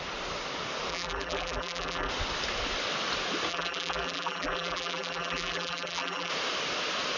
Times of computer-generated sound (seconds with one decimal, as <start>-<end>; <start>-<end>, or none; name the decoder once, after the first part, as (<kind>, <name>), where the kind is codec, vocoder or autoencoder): 0.9-2.1 (vocoder, BigVGAN v2); 3.5-6.3

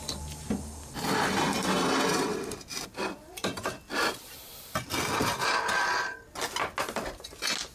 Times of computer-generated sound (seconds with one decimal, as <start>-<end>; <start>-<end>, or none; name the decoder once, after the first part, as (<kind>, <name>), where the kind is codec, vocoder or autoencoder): 2.3-5.4 (vocoder, BigVGAN v2)

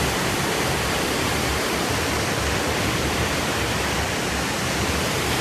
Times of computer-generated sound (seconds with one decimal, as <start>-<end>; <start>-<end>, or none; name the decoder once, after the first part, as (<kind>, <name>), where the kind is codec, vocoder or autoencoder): 1.5-4.7 (vocoder, BigVGAN v2)

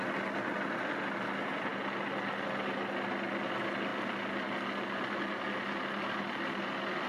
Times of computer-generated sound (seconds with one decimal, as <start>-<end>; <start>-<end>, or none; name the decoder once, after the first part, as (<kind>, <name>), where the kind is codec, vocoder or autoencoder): none

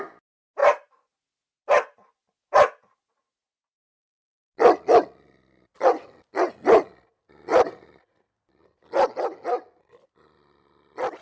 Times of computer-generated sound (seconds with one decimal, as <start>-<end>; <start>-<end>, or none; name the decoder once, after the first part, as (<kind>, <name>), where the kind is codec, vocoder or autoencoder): 0.6-1.2 (vocoder, BigVGAN v2); 7.5-8.1

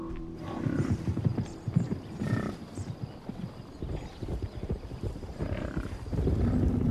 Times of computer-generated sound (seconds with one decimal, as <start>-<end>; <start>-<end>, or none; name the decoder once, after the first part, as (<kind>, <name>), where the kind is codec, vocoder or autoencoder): 4.1-5.9 (vocoder, BigVGAN v2)

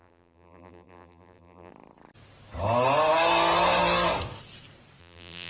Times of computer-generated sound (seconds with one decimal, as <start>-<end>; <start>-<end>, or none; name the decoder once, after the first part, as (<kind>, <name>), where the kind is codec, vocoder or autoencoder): 0.0-1.7 (vocoder, BigVGAN v2); 5.0-5.5

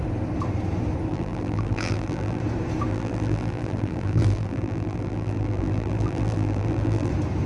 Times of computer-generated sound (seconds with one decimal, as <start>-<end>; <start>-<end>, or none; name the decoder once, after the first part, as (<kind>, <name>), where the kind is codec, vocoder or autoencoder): 1.1-2.4 (vocoder, BigVGAN v2); 2.9-7.1